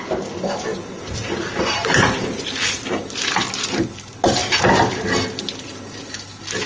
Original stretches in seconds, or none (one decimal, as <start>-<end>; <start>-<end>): 0.0-0.7; 2.4-6.7